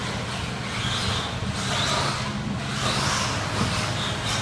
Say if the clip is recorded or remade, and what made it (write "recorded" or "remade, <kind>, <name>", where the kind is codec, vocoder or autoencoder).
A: recorded